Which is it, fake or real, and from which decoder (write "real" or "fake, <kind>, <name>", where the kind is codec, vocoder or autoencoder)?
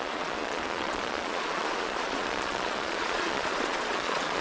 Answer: fake, vocoder, Vocos